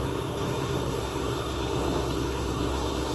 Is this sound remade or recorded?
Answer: remade